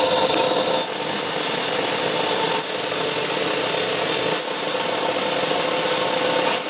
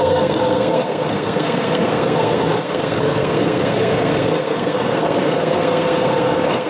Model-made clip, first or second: second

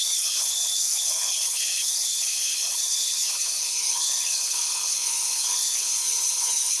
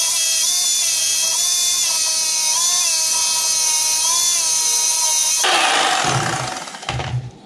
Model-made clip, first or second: first